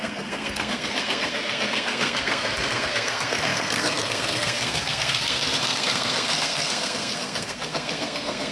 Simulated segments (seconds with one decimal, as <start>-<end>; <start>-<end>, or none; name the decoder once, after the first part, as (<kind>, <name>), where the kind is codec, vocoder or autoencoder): 0.0-8.5 (codec, SNAC)